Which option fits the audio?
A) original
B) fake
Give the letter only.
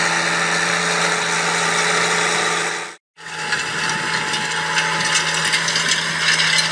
A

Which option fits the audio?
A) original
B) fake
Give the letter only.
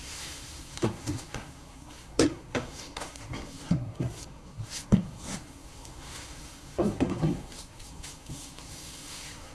B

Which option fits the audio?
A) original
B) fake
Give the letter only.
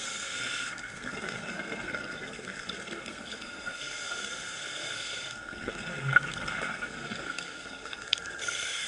B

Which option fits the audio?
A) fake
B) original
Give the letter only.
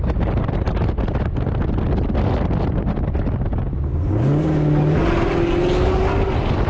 B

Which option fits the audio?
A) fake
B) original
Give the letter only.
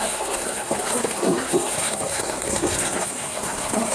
A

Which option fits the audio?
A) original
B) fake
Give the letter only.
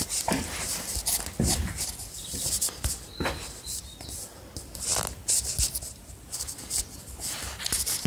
A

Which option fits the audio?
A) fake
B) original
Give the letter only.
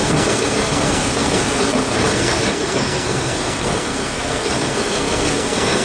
A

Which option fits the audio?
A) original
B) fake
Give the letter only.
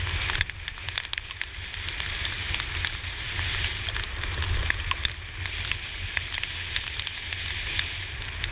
A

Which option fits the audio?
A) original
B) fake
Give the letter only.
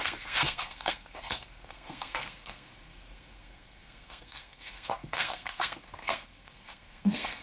B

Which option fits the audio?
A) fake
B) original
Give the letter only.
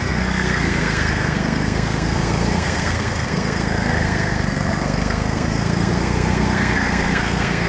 A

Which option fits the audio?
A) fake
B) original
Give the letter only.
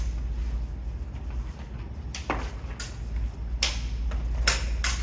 B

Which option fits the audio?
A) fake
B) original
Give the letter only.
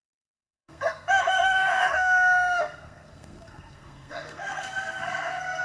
A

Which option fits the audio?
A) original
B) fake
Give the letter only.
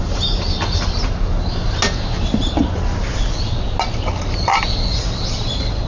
A